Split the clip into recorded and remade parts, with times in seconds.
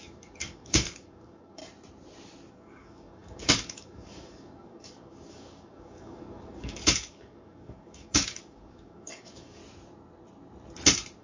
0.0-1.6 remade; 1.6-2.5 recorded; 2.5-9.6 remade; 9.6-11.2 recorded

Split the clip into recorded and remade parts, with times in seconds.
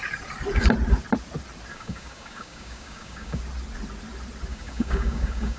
0.0-1.7 recorded; 1.7-3.4 remade; 3.4-4.5 recorded; 4.5-5.6 remade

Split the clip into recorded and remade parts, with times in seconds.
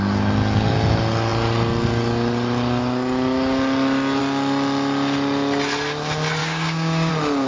0.0-6.4 recorded; 6.4-7.1 remade; 7.1-7.5 recorded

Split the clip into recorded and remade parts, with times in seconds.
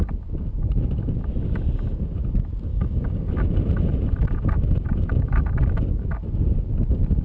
0.0-2.7 recorded; 2.7-3.3 remade; 3.3-7.2 recorded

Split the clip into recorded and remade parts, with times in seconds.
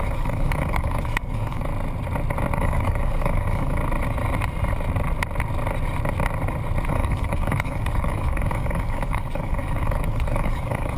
0.0-1.7 remade; 1.7-2.6 recorded; 2.6-3.8 remade; 3.8-6.9 recorded; 6.9-11.0 remade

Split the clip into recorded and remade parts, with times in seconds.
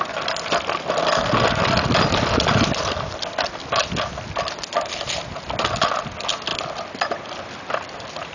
0.0-8.3 recorded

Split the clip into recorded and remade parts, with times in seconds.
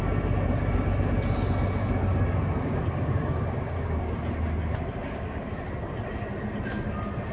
0.0-1.8 recorded; 1.8-4.0 remade; 4.0-7.3 recorded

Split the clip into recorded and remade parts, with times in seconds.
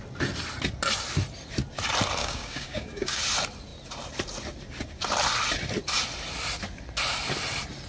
0.0-2.2 recorded; 2.2-3.2 remade; 3.2-7.9 recorded